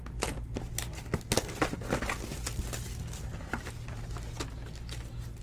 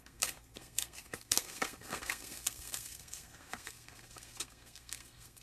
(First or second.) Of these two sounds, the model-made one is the second